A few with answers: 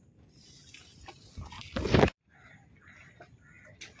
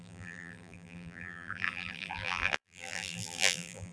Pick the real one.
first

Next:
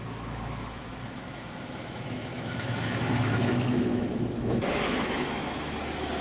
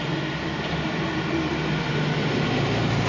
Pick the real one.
second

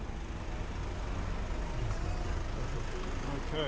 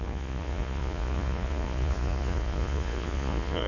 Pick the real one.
first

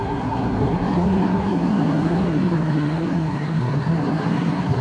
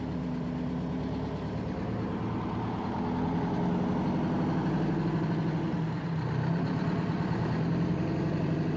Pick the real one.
second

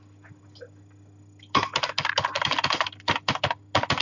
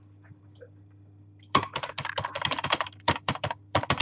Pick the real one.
first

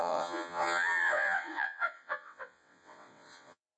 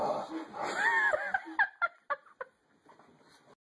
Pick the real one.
second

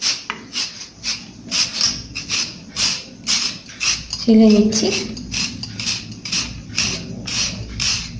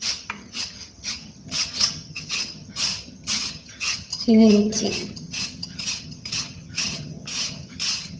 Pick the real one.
first